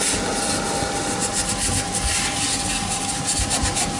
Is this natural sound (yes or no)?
yes